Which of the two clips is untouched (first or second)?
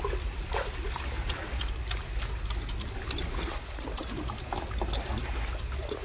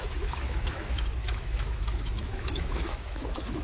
first